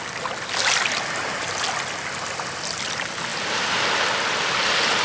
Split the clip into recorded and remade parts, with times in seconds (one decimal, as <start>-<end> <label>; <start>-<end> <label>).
0.0-5.0 recorded